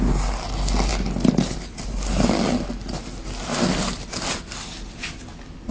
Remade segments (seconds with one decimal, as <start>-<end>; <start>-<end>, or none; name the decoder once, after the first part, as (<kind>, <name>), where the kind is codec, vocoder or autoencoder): none

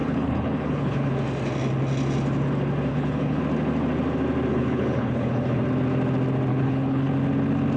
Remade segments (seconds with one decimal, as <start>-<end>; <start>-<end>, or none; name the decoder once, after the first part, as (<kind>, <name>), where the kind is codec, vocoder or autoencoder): 0.0-1.1 (codec, HILCodec); 2.9-3.4; 4.5-5.6; 6.5-7.1

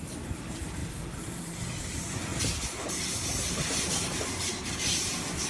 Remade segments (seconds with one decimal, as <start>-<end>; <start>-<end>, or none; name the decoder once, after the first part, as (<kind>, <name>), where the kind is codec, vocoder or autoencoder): 0.0-0.8 (vocoder, BigVGAN v2); 1.8-5.5

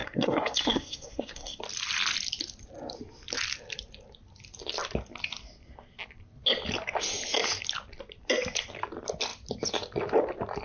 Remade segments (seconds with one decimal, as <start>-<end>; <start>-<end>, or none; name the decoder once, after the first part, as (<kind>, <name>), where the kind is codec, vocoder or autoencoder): 0.0-1.6 (codec, SNAC)

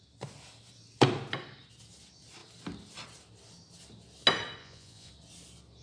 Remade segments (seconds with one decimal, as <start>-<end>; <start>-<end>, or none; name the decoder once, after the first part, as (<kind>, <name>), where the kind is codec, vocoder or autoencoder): 4.6-5.1 (vocoder, Vocos)